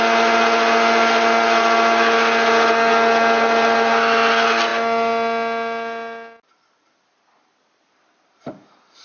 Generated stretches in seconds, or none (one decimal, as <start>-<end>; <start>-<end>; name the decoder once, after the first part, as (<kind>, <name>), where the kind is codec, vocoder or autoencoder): none

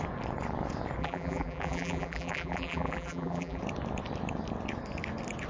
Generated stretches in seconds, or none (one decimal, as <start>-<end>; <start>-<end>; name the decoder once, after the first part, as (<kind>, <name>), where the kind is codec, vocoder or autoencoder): 1.0-3.6 (vocoder, BigVGAN v2)

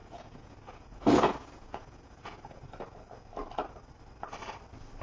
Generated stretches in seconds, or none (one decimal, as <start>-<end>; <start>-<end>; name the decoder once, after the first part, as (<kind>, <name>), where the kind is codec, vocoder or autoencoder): 0.0-3.0 (vocoder, Vocos)